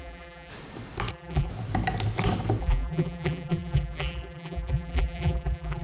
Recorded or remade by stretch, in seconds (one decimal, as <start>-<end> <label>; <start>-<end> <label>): 0.0-0.5 remade; 0.5-1.1 recorded; 1.1-1.5 remade; 1.5-2.6 recorded; 2.6-5.8 remade